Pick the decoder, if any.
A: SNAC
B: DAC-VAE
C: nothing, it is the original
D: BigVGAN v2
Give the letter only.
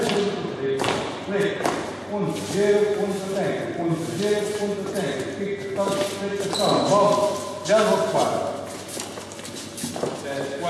C